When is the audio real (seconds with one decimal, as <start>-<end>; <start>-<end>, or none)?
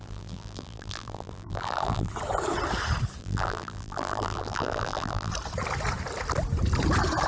2.1-3.2; 5.3-7.3